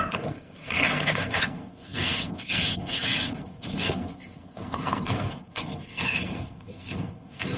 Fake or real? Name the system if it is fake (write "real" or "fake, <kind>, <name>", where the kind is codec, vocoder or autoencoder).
fake, codec, SNAC